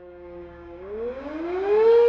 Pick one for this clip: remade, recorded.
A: remade